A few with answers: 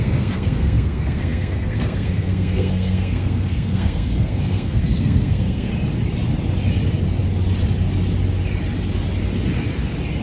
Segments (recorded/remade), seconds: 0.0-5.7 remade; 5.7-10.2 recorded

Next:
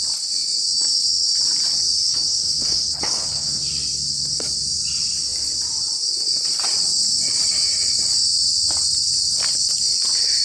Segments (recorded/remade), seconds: 0.0-2.1 recorded; 2.1-3.6 remade; 3.6-10.4 recorded

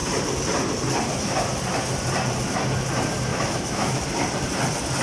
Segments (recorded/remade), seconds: 0.0-3.3 recorded; 3.3-4.0 remade; 4.0-5.0 recorded

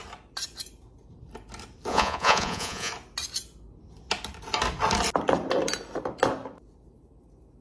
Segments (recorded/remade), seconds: 0.0-1.9 recorded; 1.9-2.9 remade; 2.9-7.6 recorded

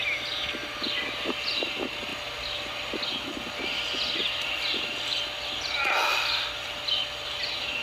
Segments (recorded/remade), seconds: 0.0-7.8 recorded

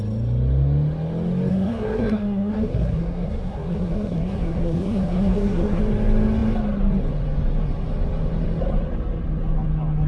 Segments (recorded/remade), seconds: 0.0-1.5 recorded; 1.5-5.8 remade; 5.8-10.1 recorded